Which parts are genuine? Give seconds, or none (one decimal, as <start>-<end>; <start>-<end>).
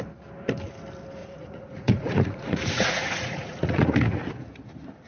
0.0-1.2; 4.3-5.1